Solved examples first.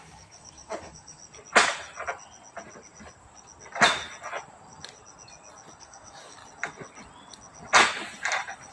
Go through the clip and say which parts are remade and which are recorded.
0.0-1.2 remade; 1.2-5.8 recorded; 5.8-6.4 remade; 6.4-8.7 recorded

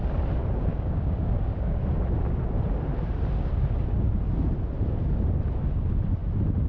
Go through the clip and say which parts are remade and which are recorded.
0.0-0.7 recorded; 0.7-1.8 remade; 1.8-6.7 recorded